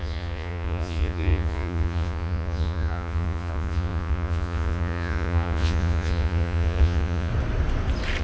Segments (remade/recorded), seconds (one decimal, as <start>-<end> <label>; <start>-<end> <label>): 0.0-7.3 remade; 7.3-8.2 recorded